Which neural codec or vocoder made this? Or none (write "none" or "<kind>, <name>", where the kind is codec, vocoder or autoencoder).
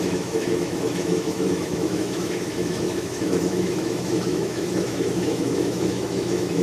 autoencoder, DAC-VAE